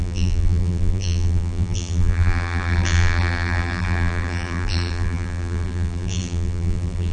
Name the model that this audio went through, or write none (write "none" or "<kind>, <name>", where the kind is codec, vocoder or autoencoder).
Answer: vocoder, BigVGAN v2